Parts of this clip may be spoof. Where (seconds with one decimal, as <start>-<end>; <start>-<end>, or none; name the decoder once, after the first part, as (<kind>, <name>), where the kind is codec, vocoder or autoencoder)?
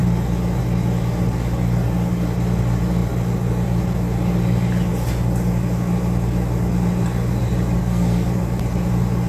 7.8-8.4 (codec, SNAC)